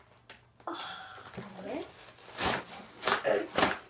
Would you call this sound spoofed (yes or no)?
no